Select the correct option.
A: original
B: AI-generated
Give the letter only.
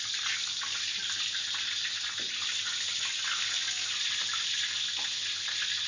A